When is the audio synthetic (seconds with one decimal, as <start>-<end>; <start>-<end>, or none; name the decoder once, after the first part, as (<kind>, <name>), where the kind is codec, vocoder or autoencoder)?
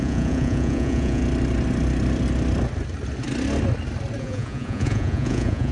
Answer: 0.0-1.2 (vocoder, Vocos); 4.2-5.7